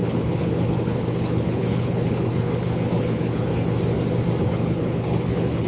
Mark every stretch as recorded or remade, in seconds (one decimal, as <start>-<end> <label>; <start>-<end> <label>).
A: 0.0-3.5 remade; 3.5-4.4 recorded; 4.4-5.7 remade